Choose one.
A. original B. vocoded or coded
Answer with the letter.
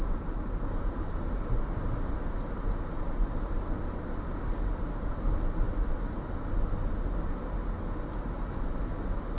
A